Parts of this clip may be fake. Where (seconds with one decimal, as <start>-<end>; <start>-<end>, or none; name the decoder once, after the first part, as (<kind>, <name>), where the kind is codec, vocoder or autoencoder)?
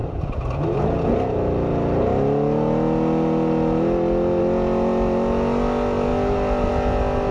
none